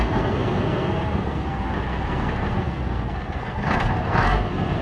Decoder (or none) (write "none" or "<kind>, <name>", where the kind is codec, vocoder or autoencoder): codec, SNAC